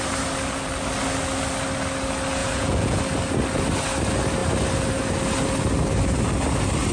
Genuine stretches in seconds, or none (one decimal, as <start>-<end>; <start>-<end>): 0.0-2.4; 3.0-6.9